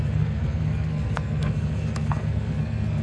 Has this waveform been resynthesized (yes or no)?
yes